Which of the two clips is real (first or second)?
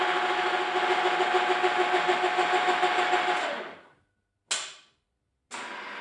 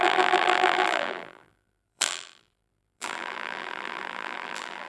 first